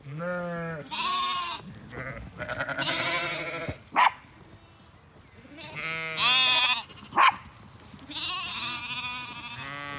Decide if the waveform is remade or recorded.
recorded